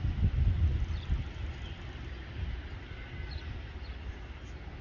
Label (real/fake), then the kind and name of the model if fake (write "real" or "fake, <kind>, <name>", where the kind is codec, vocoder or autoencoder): real